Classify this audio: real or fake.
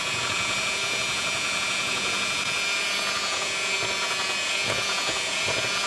fake